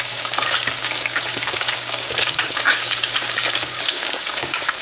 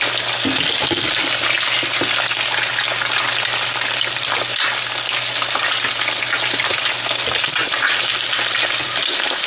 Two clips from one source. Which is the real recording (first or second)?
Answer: second